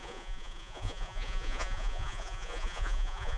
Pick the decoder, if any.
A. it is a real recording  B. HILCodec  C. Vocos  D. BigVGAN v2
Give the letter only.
C